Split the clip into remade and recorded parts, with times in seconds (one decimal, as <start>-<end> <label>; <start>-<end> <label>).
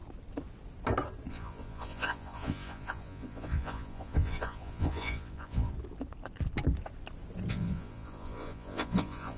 0.0-1.3 recorded; 1.3-5.7 remade; 5.7-7.5 recorded; 7.5-9.4 remade